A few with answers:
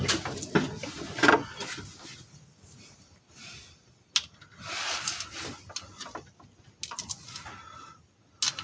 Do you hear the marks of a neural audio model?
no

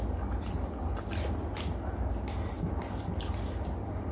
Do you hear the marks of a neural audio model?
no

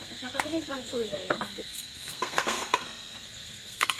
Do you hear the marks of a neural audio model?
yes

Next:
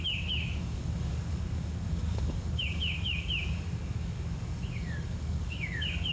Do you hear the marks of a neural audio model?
yes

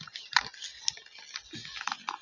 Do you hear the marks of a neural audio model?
no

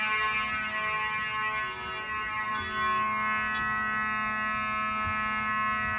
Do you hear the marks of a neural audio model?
no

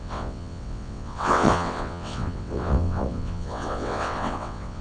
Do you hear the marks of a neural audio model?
yes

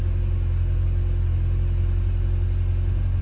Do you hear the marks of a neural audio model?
no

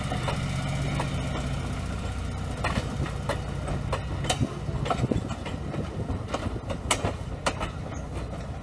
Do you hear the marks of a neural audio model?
no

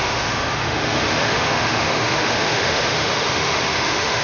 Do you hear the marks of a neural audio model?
yes